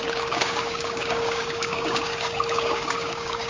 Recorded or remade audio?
remade